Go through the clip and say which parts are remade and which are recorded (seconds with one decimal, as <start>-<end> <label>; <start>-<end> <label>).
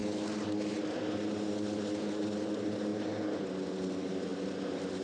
0.0-5.0 recorded